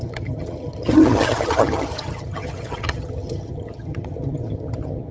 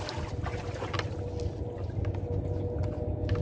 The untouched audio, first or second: second